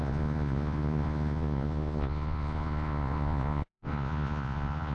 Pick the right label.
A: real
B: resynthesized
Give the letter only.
B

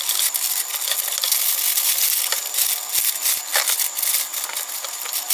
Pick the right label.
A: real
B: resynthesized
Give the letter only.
A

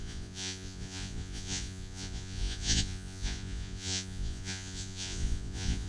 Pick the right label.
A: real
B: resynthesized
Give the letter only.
B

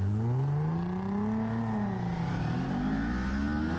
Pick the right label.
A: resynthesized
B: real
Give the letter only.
B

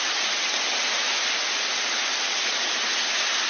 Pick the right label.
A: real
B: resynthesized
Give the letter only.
A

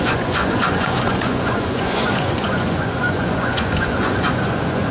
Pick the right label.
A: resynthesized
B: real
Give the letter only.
A